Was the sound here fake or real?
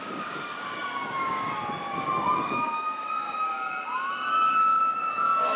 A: fake